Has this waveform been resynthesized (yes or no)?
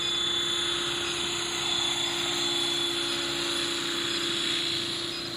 no